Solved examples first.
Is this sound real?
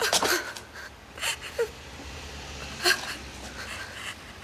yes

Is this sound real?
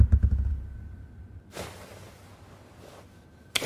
yes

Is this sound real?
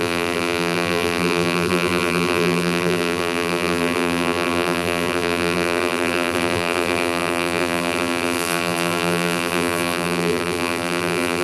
no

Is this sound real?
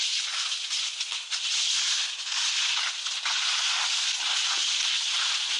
yes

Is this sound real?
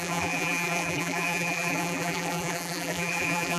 no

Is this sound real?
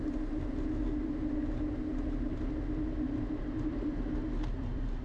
yes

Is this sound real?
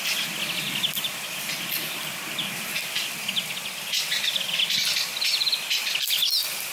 no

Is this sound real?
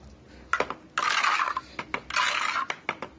yes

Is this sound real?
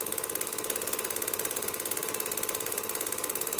no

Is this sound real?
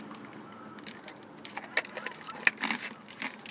yes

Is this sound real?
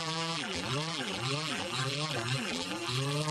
no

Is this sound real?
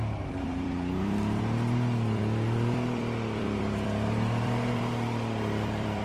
no